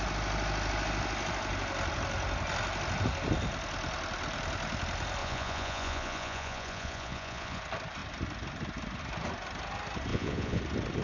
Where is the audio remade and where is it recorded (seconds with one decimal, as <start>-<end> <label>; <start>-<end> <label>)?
0.0-5.2 recorded; 5.2-7.6 remade; 7.6-10.1 recorded; 10.1-10.6 remade; 10.6-11.0 recorded